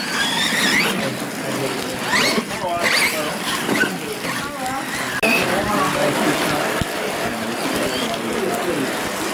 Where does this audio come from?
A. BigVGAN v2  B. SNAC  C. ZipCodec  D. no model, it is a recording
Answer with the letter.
D